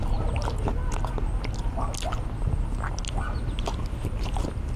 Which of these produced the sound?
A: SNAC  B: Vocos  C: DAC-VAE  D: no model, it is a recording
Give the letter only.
D